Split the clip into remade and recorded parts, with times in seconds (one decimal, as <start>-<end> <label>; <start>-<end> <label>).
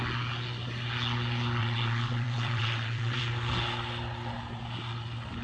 0.0-1.6 recorded; 1.6-3.2 remade; 3.2-5.4 recorded